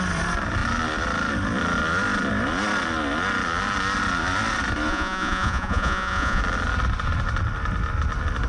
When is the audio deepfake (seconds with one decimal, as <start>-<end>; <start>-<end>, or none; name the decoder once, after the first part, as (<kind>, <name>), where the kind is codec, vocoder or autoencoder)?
4.9-6.4 (vocoder, Vocos)